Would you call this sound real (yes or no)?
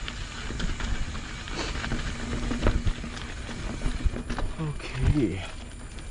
yes